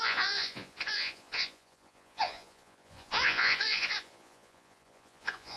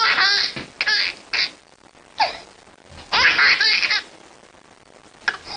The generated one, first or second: first